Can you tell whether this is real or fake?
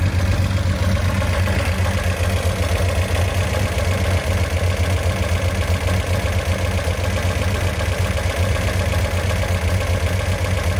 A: real